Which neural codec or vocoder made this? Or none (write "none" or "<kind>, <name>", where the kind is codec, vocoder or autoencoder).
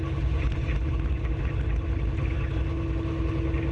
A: none